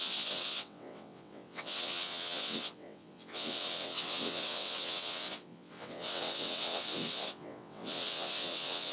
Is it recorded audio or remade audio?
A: remade